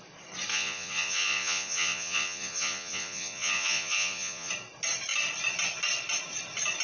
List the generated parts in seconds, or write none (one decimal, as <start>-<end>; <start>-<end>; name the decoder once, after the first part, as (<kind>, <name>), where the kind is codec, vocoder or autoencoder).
0.5-4.5 (vocoder, Vocos)